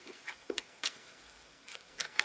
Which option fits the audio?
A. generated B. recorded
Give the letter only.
A